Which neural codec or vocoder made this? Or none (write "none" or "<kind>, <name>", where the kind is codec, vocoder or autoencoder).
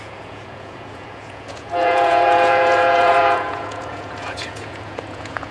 vocoder, Vocos